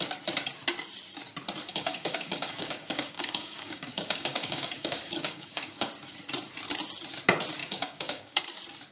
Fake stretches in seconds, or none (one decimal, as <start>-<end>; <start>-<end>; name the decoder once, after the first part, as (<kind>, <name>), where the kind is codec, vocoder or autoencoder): 1.7-5.9 (codec, DAC); 7.6-8.4